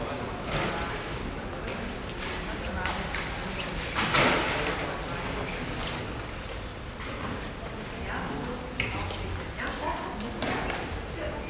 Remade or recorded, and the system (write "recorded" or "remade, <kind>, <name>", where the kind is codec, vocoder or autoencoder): recorded